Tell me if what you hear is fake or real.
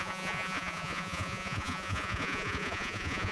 fake